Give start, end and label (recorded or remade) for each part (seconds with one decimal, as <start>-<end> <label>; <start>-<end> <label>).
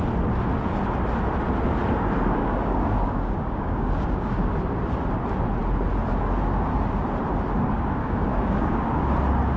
0.0-2.4 recorded; 2.4-4.5 remade; 4.5-8.0 recorded; 8.0-9.0 remade; 9.0-9.6 recorded